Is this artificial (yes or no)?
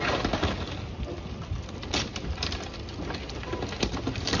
no